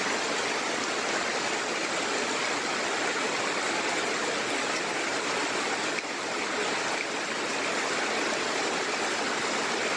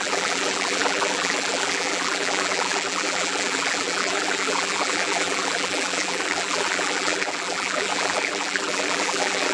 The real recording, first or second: first